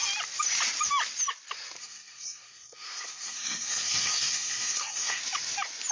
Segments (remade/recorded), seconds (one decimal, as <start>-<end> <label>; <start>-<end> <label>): 0.0-1.8 recorded; 1.8-5.2 remade; 5.2-5.9 recorded